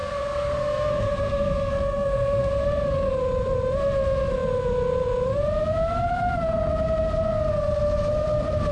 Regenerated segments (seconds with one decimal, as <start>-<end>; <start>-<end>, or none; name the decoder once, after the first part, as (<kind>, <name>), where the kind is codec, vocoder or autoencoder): 0.0-2.5 (codec, SNAC)